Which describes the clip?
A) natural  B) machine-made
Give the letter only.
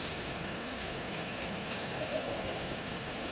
B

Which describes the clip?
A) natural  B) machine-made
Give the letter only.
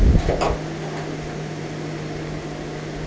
A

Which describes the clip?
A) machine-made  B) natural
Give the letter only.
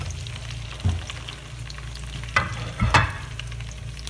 B